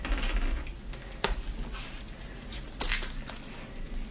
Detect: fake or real real